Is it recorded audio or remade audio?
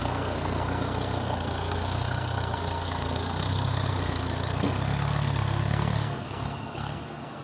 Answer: remade